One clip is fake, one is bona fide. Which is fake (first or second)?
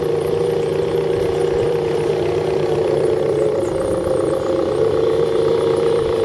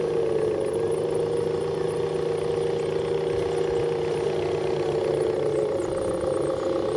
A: first